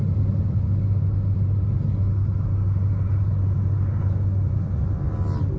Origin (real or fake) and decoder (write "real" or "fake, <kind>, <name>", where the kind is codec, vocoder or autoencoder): real